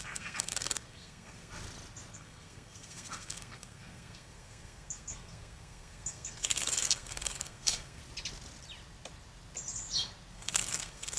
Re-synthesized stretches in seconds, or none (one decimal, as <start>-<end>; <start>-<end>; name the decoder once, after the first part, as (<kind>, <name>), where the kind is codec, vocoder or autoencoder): 0.0-1.5 (codec, SNAC); 2.1-8.0; 10.3-11.2